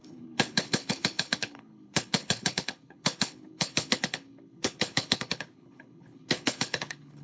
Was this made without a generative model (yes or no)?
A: no